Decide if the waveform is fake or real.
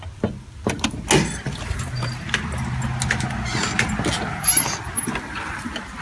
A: real